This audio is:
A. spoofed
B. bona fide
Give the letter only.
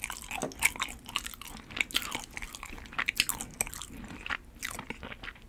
B